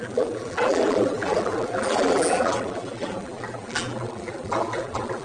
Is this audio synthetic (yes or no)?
yes